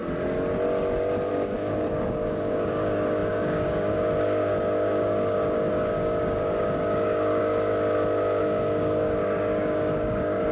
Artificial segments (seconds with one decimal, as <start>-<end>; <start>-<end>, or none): 1.3-7.7; 8.4-10.5